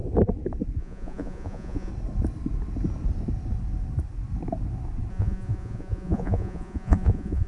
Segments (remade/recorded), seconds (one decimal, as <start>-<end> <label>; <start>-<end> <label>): 0.0-0.8 recorded; 0.8-1.9 remade; 1.9-5.1 recorded; 5.1-7.5 remade